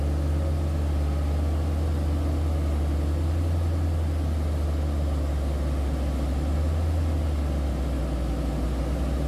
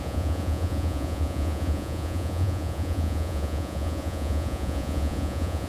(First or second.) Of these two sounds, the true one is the first